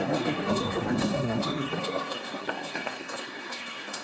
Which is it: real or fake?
fake